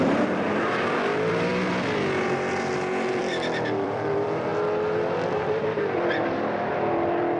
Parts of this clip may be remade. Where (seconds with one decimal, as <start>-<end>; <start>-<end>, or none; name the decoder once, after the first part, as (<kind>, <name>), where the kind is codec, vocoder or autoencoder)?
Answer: 0.0-1.5 (vocoder, BigVGAN v2); 3.2-4.5; 5.4-7.4